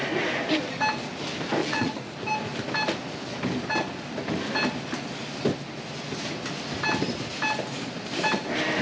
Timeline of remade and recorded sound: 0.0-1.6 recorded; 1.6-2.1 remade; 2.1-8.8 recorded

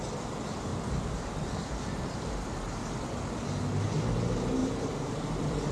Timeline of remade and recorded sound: 0.0-0.7 recorded; 0.7-2.8 remade; 2.8-4.6 recorded; 4.6-5.7 remade

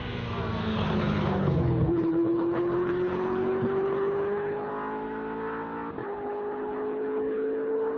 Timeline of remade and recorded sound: 0.0-0.7 recorded; 0.7-4.7 remade; 4.7-6.0 recorded; 6.0-8.0 remade